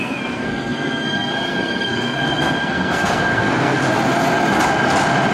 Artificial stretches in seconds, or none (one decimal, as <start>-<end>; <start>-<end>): 0.0-3.8